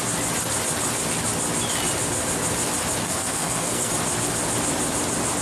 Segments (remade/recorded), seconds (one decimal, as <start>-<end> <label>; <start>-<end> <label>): 0.0-3.0 recorded; 3.0-3.9 remade; 3.9-5.4 recorded